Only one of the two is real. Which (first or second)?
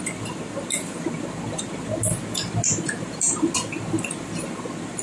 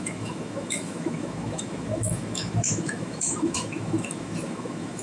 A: first